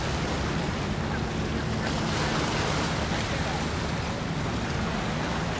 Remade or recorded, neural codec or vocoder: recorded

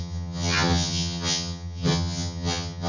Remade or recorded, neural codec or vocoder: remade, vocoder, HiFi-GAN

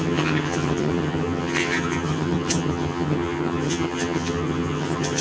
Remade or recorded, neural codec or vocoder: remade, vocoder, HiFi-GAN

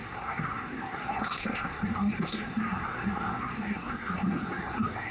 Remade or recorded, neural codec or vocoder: remade, codec, SNAC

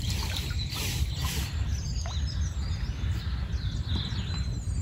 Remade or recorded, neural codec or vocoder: recorded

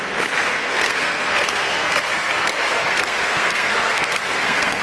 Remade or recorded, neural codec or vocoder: remade, codec, SNAC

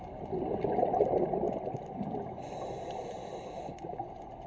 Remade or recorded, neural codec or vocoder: recorded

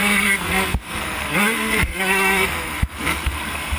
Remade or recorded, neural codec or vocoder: remade, codec, SNAC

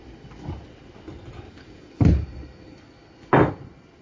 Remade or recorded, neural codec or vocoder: recorded